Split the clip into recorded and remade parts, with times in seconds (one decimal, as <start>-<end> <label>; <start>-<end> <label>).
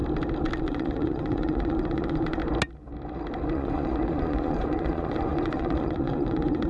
0.0-0.6 recorded; 0.6-2.4 remade; 2.4-3.5 recorded; 3.5-6.7 remade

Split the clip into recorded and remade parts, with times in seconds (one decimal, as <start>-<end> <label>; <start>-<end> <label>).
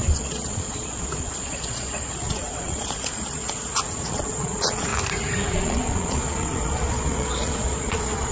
0.0-4.9 remade; 4.9-5.5 recorded; 5.5-8.3 remade